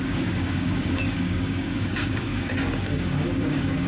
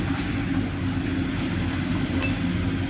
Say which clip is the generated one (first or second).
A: first